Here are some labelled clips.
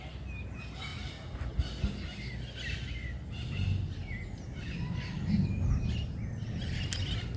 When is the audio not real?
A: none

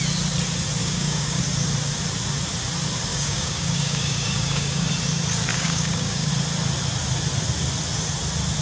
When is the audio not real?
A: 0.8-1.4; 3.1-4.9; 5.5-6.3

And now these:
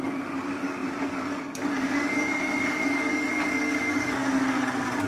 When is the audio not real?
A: 0.0-5.1